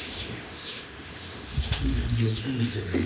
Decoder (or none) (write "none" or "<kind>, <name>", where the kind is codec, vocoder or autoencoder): autoencoder, DAC-VAE